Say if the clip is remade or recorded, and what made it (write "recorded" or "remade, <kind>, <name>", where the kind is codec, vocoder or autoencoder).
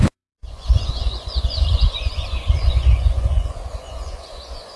remade, vocoder, Vocos